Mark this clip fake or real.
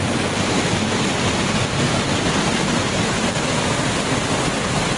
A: real